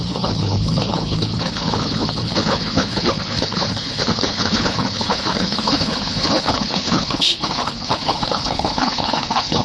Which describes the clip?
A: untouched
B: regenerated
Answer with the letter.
B